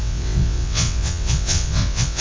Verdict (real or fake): fake